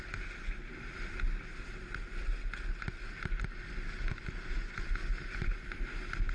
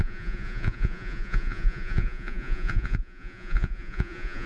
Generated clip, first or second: second